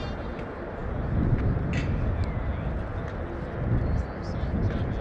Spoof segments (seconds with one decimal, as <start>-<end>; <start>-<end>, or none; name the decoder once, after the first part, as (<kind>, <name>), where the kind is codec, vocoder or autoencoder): none